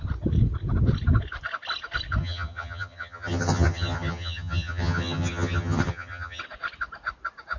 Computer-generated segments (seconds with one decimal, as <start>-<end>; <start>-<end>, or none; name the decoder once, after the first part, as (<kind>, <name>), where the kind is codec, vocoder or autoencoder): 2.2-6.4 (vocoder, HiFi-GAN)